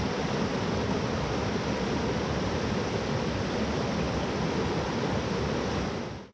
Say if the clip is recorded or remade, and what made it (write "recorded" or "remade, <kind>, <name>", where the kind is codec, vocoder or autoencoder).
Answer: recorded